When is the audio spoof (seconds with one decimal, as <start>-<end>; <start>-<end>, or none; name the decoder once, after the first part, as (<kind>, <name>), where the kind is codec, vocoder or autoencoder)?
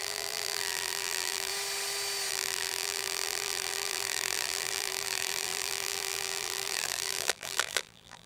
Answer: 0.0-1.5 (vocoder, BigVGAN v2); 2.3-8.3